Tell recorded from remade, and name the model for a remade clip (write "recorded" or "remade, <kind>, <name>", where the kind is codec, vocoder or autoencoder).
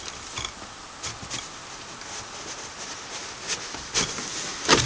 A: recorded